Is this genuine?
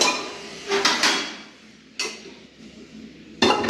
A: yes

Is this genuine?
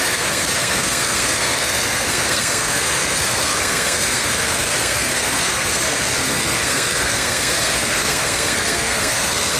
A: no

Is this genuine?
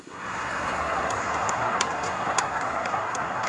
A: no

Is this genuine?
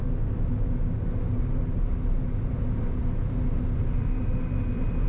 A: yes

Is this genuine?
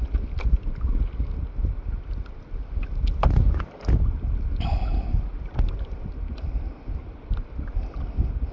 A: yes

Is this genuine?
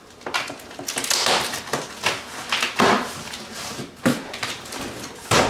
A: yes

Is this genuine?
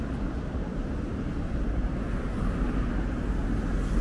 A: yes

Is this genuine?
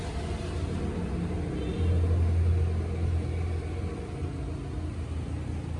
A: yes